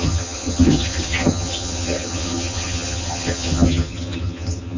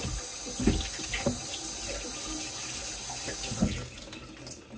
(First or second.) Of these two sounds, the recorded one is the second